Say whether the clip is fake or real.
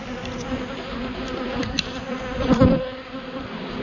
real